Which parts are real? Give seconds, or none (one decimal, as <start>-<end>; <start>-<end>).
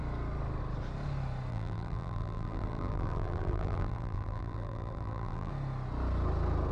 0.0-1.5; 5.5-6.7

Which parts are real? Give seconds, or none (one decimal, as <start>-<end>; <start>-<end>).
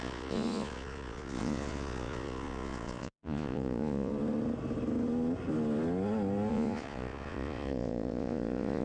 4.1-6.5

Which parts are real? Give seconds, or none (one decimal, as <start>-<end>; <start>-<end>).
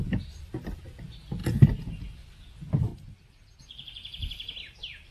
0.0-5.1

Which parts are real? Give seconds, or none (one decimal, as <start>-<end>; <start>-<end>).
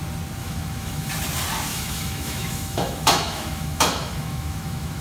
0.0-0.4; 1.1-1.7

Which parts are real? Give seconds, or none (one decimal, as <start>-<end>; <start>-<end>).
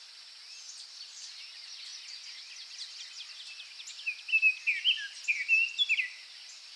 0.0-6.8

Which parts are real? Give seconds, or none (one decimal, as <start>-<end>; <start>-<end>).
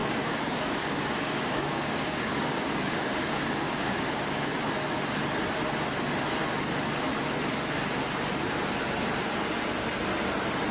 4.5-10.7